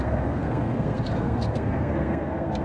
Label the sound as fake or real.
fake